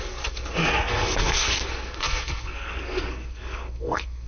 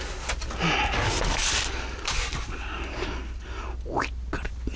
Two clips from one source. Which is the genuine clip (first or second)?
second